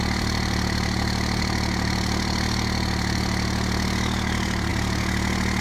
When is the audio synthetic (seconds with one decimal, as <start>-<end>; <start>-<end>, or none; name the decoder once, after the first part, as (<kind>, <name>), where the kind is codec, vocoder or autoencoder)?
none